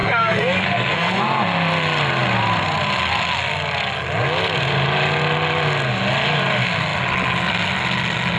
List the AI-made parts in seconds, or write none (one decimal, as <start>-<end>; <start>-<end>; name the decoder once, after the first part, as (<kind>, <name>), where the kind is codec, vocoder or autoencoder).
0.0-1.2 (codec, SNAC)